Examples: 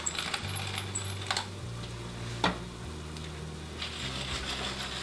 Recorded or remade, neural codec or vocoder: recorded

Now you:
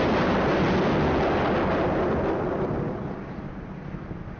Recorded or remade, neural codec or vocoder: recorded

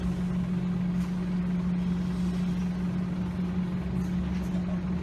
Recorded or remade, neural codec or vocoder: recorded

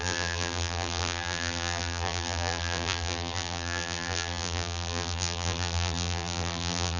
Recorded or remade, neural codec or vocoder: remade, vocoder, BigVGAN v2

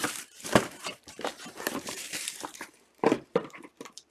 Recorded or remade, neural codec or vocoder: remade, vocoder, BigVGAN v2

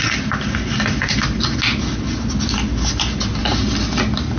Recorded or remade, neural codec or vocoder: recorded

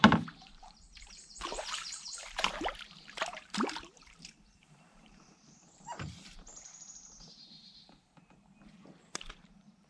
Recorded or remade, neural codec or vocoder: remade, vocoder, BigVGAN v2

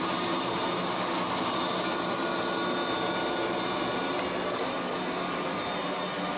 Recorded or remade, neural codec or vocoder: recorded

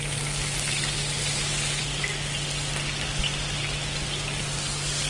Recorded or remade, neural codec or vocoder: recorded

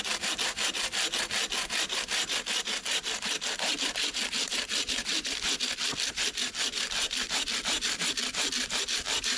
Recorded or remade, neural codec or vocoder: remade, vocoder, BigVGAN v2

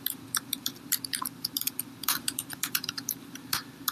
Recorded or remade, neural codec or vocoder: remade, vocoder, BigVGAN v2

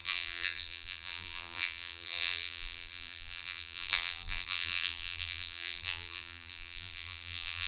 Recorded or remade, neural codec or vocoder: remade, vocoder, BigVGAN v2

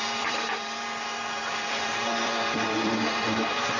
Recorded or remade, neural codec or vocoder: remade, vocoder, BigVGAN v2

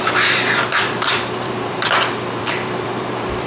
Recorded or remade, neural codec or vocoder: remade, vocoder, BigVGAN v2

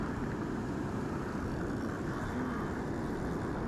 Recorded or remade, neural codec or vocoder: recorded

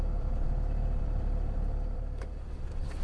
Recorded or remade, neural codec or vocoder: remade, vocoder, BigVGAN v2